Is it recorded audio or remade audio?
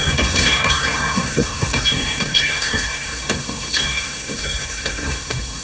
remade